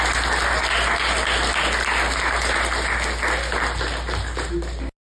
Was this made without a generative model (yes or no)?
yes